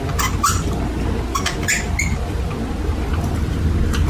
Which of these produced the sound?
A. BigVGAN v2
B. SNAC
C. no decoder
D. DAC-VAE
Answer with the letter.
C